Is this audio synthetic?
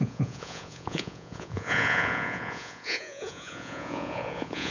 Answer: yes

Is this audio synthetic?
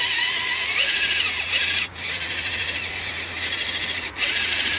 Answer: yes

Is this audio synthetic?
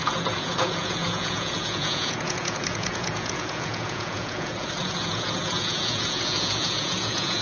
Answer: yes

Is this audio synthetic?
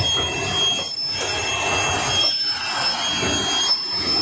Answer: no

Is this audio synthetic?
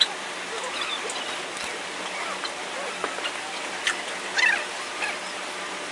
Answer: no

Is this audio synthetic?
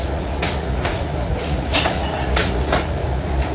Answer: yes